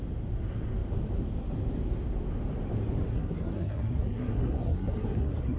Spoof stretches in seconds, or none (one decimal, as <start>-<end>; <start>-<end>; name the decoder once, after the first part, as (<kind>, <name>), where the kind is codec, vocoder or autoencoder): 3.1-5.6 (codec, SNAC)